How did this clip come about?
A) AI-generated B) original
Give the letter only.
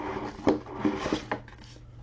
B